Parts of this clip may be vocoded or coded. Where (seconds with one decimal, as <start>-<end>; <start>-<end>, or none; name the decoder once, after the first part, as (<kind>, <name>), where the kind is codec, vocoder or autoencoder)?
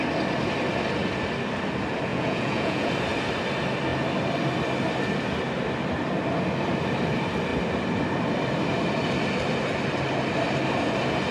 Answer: 2.1-2.9 (vocoder, Vocos)